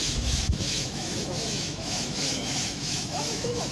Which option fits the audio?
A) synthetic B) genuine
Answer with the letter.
A